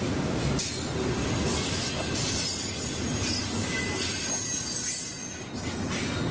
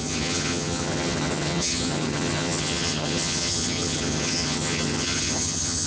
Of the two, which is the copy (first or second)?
second